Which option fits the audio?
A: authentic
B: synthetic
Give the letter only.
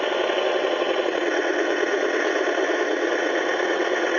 B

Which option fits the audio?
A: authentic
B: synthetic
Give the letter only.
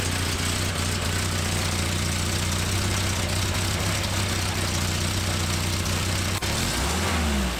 A